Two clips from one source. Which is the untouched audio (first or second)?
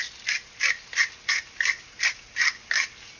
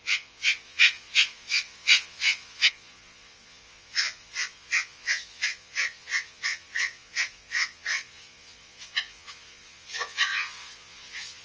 first